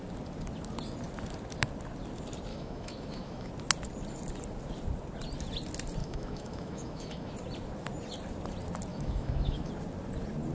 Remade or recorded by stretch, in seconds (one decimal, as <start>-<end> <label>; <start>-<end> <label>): 0.0-2.5 recorded; 2.5-3.5 remade; 3.5-6.0 recorded; 6.0-7.3 remade; 7.3-8.9 recorded; 8.9-9.7 remade; 9.7-10.5 recorded